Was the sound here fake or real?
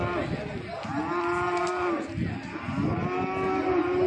real